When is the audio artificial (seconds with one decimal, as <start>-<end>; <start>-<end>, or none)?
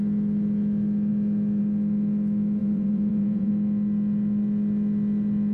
2.6-3.5